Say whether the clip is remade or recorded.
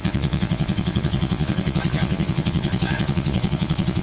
remade